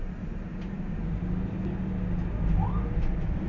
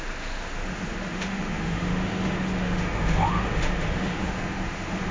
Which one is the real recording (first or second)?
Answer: first